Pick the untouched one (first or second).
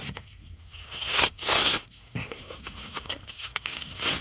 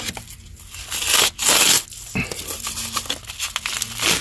second